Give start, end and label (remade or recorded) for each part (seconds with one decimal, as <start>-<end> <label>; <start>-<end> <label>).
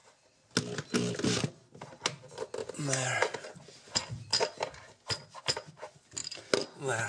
0.0-7.1 recorded